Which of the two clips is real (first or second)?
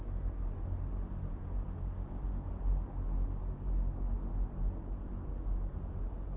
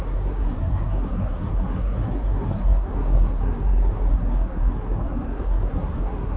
first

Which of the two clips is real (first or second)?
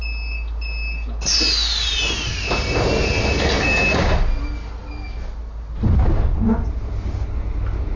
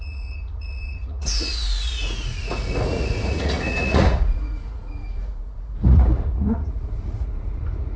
first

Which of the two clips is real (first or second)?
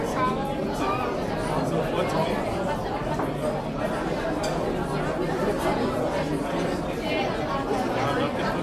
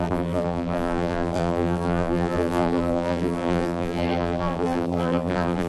first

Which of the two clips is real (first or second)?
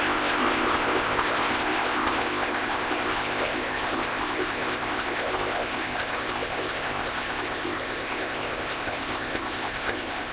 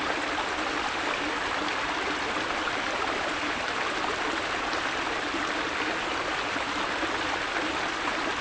second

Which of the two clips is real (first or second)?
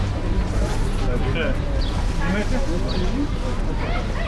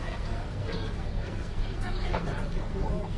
first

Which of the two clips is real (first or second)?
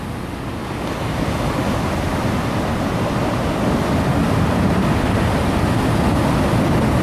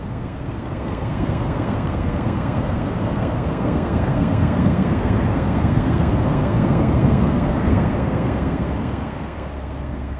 first